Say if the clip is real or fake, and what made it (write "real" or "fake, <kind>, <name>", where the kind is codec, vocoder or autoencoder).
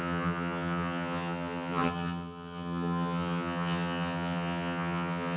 fake, vocoder, HiFi-GAN